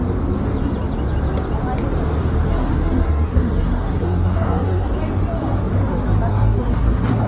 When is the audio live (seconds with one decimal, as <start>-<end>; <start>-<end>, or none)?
0.0-2.5; 4.9-6.3